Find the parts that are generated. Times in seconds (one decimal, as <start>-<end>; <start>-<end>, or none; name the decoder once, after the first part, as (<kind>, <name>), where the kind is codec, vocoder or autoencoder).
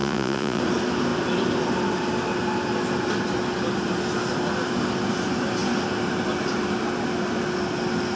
0.0-0.6 (vocoder, Vocos)